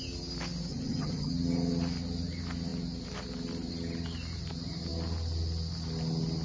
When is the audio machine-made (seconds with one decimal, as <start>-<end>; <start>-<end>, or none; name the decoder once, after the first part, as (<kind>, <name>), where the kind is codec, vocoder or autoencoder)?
0.7-1.3 (vocoder, HiFi-GAN)